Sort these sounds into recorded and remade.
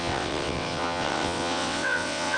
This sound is remade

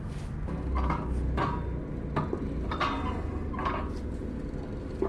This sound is recorded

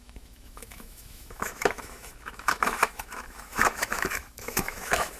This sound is remade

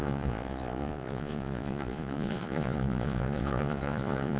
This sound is remade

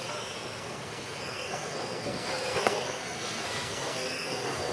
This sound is remade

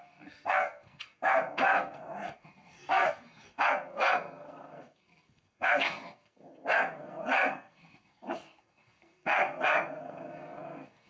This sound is remade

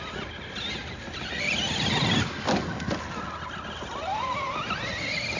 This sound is recorded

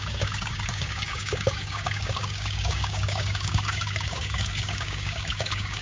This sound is remade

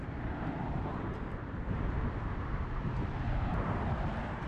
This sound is remade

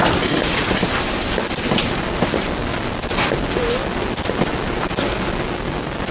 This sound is recorded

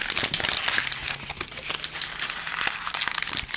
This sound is recorded